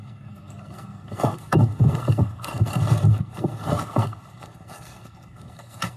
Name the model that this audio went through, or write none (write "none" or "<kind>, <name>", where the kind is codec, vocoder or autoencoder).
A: codec, SNAC